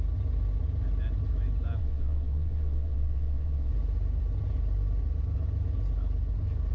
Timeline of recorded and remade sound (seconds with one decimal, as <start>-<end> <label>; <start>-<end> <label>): 0.0-1.8 recorded; 1.8-3.7 remade; 3.7-6.7 recorded